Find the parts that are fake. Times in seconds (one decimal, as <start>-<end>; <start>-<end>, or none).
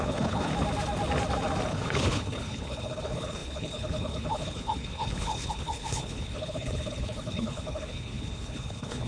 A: 0.0-0.5; 1.7-9.1